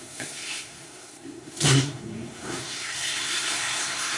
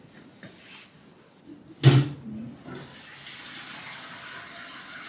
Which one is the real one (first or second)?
second